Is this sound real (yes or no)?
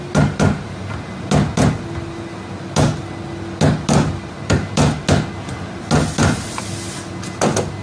yes